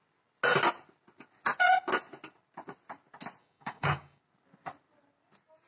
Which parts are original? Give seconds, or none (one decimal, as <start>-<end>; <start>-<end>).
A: 0.0-3.4; 4.2-5.7